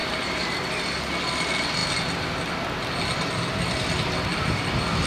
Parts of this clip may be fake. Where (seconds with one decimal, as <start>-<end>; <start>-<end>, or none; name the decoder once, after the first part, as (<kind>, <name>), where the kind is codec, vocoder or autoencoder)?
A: 0.0-0.6 (vocoder, BigVGAN v2)

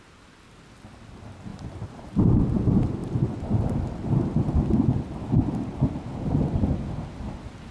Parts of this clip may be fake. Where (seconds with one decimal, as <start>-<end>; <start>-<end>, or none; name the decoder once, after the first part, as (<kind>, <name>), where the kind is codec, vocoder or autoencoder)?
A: 1.5-2.3 (vocoder, BigVGAN v2)

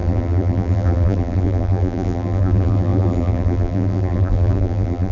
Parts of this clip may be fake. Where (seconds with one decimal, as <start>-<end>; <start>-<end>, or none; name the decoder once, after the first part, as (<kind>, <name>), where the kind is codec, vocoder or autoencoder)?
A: 0.0-5.1 (vocoder, BigVGAN v2)

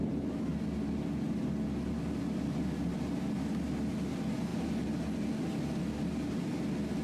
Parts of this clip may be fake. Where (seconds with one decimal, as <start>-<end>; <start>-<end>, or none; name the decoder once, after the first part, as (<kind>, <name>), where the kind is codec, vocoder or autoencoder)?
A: none

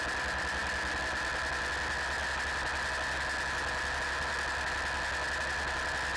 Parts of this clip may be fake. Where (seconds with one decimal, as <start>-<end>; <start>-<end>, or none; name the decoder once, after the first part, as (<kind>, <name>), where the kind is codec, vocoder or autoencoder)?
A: none

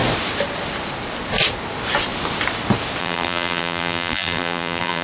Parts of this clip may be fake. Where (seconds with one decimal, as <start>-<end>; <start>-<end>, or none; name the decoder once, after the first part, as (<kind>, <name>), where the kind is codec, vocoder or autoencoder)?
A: 3.0-5.0 (vocoder, BigVGAN v2)

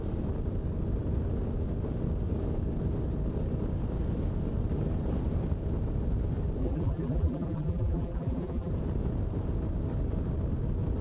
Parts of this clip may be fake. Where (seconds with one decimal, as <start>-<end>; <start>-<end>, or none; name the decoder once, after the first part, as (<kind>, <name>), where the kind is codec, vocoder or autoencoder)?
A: 6.6-8.7 (vocoder, BigVGAN v2)